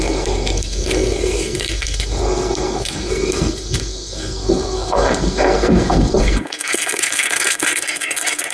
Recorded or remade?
remade